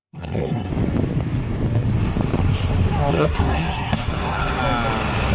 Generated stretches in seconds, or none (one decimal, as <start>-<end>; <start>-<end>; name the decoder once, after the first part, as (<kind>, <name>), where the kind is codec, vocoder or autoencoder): 0.0-0.7 (codec, SNAC); 3.1-4.6